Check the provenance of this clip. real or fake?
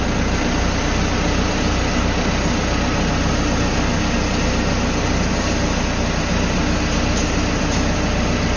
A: real